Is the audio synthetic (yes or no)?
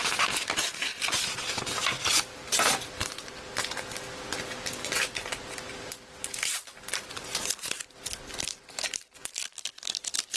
no